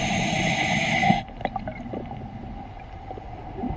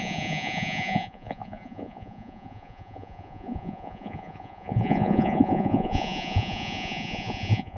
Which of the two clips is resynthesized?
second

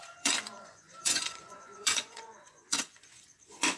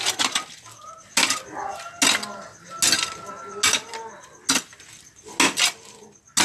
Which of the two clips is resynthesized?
first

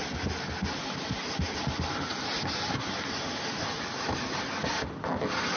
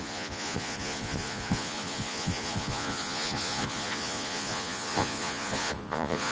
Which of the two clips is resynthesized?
second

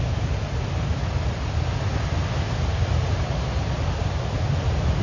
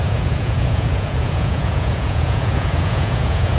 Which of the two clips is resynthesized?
second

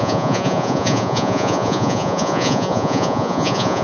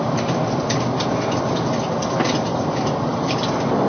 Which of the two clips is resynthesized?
first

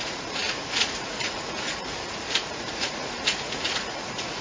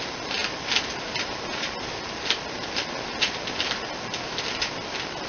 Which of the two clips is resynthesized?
first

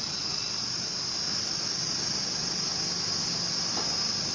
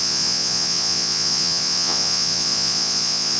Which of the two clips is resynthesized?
second